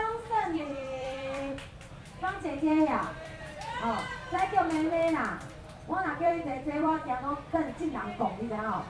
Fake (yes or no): yes